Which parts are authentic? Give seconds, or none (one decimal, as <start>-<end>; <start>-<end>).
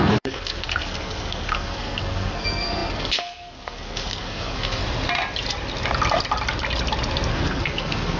4.8-7.3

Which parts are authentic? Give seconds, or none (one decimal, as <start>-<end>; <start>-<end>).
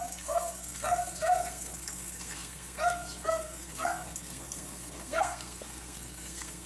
none